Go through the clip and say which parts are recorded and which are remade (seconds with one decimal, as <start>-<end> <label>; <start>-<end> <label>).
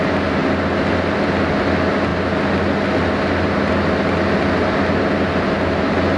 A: 0.0-6.2 recorded